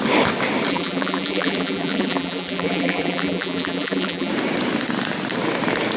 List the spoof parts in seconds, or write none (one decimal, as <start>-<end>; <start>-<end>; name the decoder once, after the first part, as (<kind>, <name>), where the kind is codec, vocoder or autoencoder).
0.7-4.3 (vocoder, BigVGAN v2)